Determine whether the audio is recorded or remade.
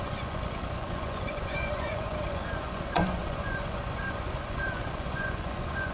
remade